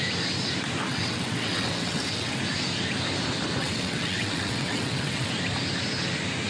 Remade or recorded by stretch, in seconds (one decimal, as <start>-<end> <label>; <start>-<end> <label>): 0.0-0.9 recorded; 0.9-2.4 remade; 2.4-3.6 recorded; 3.6-5.3 remade; 5.3-6.5 recorded